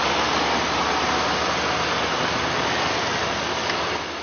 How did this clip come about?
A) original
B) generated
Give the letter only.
A